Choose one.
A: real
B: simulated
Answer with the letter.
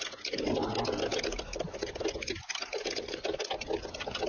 A